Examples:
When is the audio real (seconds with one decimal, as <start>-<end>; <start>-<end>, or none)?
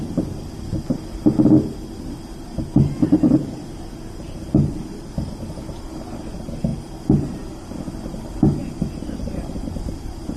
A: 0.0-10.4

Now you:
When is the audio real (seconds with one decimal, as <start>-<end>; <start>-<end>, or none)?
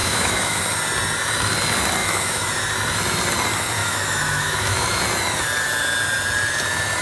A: 0.6-2.0; 2.5-3.8; 5.0-7.0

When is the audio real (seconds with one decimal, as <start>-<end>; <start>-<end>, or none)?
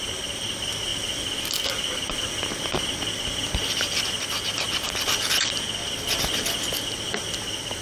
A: 0.0-7.8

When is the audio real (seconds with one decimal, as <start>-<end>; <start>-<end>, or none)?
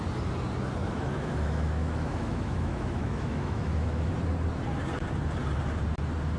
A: 0.0-0.8; 4.1-6.4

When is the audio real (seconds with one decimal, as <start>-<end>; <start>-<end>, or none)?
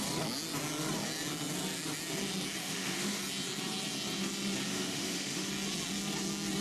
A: 0.0-2.6; 3.2-4.7; 5.5-6.6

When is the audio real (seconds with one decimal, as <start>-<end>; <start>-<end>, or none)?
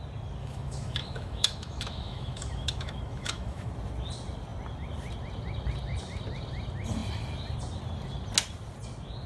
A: 0.0-0.4; 3.7-9.3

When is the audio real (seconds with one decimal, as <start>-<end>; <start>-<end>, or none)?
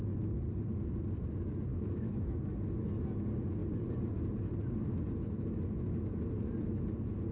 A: 0.0-1.7; 2.4-7.3